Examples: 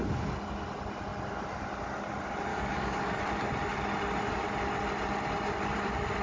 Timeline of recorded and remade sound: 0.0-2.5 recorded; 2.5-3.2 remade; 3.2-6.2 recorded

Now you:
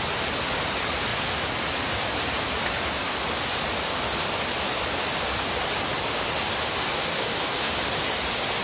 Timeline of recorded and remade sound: 0.0-7.1 recorded; 7.1-7.7 remade; 7.7-8.6 recorded

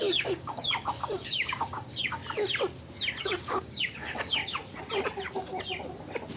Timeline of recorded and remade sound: 0.0-2.2 remade; 2.2-3.2 recorded; 3.2-4.4 remade; 4.4-6.4 recorded

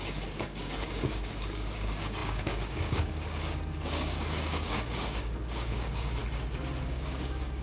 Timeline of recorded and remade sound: 0.0-6.2 remade; 6.2-6.8 recorded; 6.8-7.6 remade

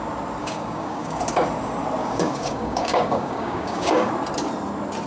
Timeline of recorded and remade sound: 0.0-0.4 recorded; 0.4-1.2 remade; 1.2-2.0 recorded; 2.0-4.1 remade; 4.1-5.1 recorded

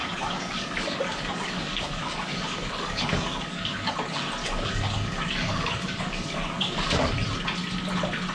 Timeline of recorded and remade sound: 0.0-3.9 remade; 3.9-4.4 recorded; 4.4-7.1 remade; 7.1-8.3 recorded